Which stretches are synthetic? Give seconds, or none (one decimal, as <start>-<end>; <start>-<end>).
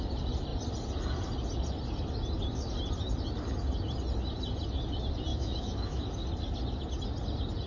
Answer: 5.3-6.0